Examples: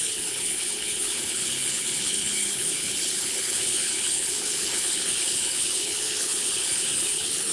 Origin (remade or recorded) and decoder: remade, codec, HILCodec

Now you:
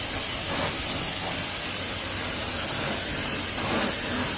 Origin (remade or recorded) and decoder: recorded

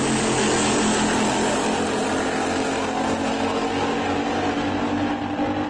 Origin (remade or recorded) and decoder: recorded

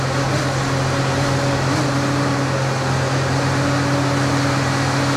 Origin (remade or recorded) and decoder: recorded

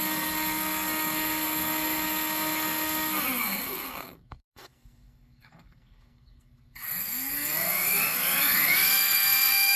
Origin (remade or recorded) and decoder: remade, codec, SNAC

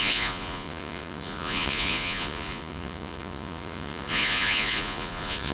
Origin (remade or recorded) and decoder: remade, vocoder, Vocos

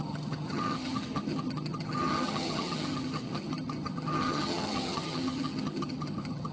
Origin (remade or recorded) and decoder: remade, vocoder, HiFi-GAN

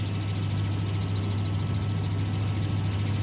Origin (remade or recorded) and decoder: recorded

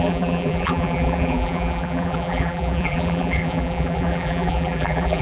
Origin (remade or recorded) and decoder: remade, vocoder, BigVGAN v2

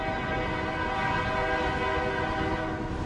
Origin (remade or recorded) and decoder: recorded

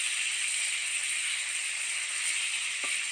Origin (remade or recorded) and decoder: recorded